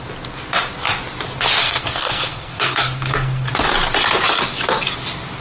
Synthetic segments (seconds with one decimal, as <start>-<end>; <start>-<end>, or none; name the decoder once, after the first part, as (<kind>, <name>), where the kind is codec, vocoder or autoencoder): 1.6-3.5 (codec, SNAC)